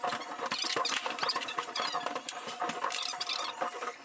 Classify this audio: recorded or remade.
recorded